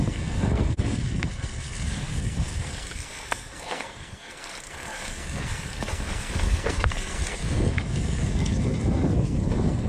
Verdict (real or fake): fake